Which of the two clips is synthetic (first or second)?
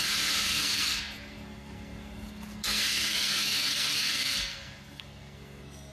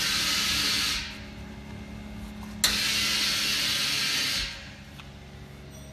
first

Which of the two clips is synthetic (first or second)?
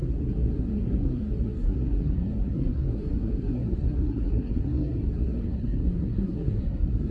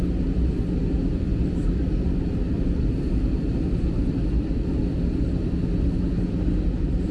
first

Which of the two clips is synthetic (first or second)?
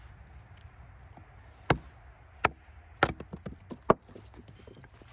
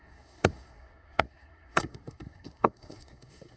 second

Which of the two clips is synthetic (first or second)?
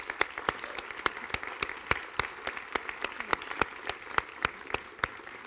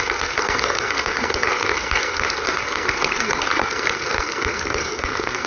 second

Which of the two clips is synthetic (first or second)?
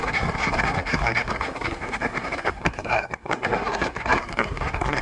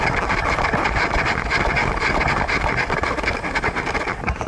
first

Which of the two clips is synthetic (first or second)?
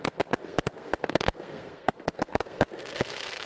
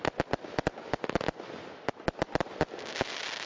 first